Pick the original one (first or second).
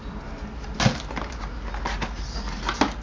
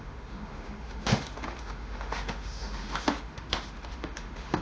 first